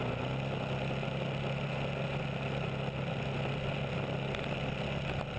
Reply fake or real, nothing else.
real